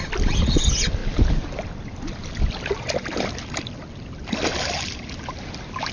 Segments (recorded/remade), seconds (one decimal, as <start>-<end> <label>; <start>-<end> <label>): 0.0-5.9 recorded